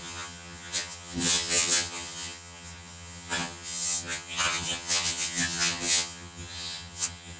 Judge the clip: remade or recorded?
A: remade